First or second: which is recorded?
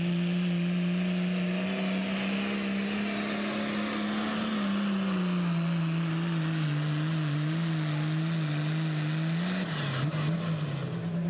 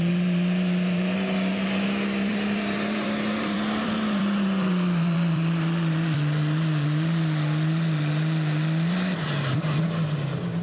first